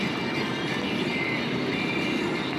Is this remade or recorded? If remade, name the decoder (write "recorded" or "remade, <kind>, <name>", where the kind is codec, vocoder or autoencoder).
recorded